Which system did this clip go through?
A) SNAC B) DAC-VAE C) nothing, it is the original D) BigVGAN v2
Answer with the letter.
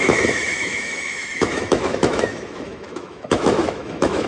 B